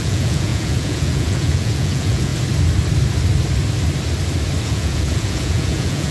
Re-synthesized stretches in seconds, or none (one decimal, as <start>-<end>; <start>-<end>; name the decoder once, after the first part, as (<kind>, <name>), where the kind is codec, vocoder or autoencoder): 0.0-2.3 (vocoder, Vocos); 4.6-6.1

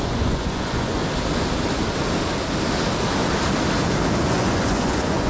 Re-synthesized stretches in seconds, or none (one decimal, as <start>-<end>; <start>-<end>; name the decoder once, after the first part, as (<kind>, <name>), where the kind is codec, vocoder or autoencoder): 0.0-1.0 (vocoder, Vocos); 4.2-5.3

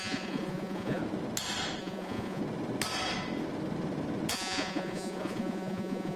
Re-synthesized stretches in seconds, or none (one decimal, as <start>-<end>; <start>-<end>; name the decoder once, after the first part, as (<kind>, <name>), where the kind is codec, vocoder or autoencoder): 0.0-1.0 (vocoder, Vocos); 1.8-2.4; 4.3-6.2